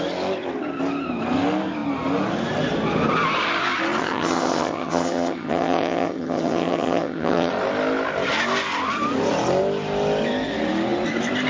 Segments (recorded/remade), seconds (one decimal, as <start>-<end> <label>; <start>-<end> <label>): 0.0-4.0 recorded; 4.0-7.5 remade; 7.5-11.5 recorded